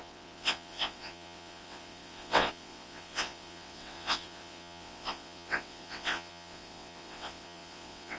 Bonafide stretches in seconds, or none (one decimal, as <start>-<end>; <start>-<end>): none